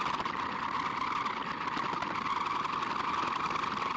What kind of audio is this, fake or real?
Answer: real